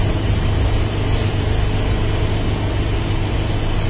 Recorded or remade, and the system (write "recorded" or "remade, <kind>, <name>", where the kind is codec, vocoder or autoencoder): recorded